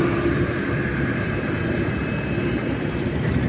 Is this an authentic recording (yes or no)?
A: no